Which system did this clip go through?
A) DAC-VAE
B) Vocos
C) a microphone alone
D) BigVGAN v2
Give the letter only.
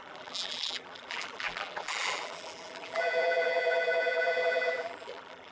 D